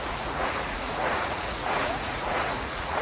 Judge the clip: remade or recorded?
remade